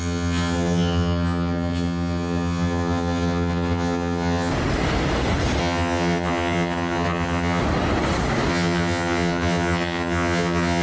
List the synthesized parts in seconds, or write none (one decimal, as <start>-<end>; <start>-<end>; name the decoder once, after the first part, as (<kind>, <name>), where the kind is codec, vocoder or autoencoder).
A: 0.0-4.5 (vocoder, HiFi-GAN); 5.6-7.6; 8.5-10.8